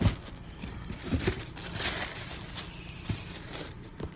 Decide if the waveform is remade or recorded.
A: recorded